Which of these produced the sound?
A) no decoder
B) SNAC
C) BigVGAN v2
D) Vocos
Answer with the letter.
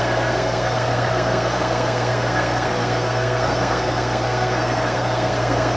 B